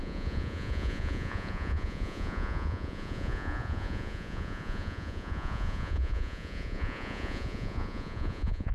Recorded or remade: remade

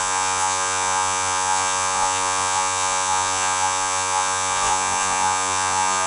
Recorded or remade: remade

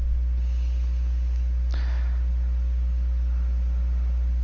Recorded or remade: recorded